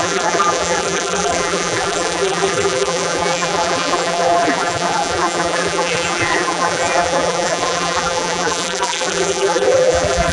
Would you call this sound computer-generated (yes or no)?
yes